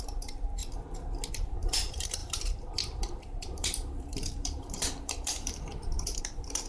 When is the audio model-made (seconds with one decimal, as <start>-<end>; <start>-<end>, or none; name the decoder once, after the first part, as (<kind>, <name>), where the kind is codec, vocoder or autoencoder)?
0.0-0.6 (vocoder, BigVGAN v2); 1.3-6.7